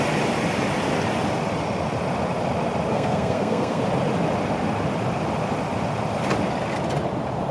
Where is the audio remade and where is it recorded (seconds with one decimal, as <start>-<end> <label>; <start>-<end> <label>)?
0.0-2.9 recorded; 2.9-3.8 remade; 3.8-7.5 recorded